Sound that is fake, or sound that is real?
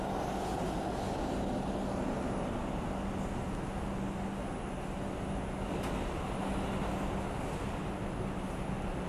real